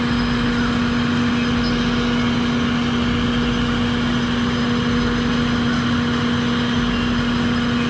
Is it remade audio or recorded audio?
recorded